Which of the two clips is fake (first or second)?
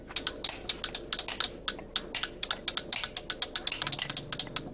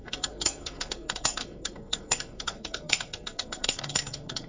second